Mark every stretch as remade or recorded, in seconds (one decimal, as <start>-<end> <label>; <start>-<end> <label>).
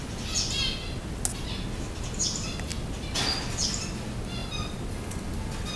0.0-5.8 recorded